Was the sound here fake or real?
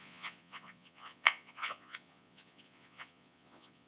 fake